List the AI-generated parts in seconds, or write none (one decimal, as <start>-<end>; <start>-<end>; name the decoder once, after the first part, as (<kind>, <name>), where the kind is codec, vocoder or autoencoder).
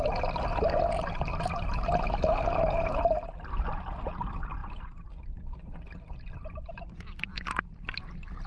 none